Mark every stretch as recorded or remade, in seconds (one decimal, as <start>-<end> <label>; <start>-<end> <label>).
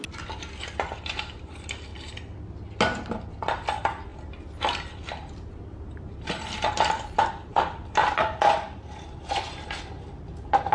0.0-10.7 recorded